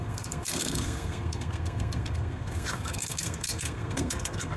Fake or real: fake